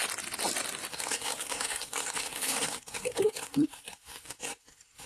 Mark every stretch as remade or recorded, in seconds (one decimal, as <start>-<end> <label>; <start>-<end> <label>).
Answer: 0.0-0.9 recorded; 0.9-5.1 remade